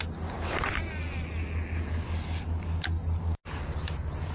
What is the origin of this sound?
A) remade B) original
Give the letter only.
B